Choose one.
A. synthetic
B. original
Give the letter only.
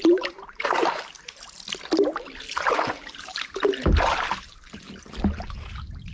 B